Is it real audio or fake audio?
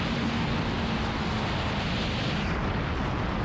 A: real